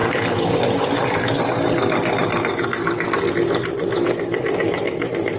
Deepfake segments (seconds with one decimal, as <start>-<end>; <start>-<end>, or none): 3.6-5.4